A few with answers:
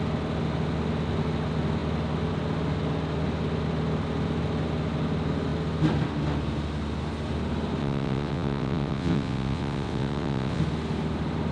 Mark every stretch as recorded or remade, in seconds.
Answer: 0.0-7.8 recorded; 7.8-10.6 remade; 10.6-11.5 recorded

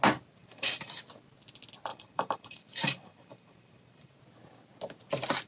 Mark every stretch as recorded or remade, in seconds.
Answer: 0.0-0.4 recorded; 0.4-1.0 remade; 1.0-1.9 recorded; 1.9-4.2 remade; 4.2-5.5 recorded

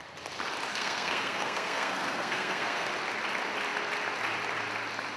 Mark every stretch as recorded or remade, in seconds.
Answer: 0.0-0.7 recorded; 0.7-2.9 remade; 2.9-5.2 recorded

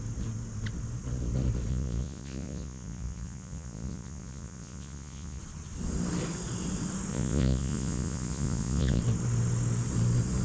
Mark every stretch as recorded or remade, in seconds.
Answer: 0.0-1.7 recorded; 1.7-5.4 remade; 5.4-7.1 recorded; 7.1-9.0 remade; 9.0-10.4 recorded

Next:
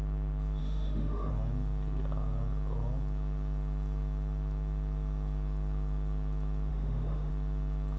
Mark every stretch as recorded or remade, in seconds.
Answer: 0.0-0.6 recorded; 0.6-1.3 remade; 1.3-6.7 recorded; 6.7-7.3 remade; 7.3-8.0 recorded

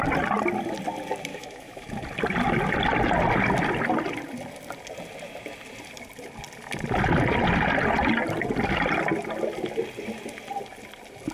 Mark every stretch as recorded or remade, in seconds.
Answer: 0.0-1.3 recorded; 1.3-1.9 remade; 1.9-11.3 recorded